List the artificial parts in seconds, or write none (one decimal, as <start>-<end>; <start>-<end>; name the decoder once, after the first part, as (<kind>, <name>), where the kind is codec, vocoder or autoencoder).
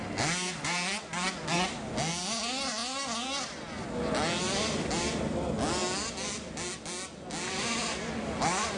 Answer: none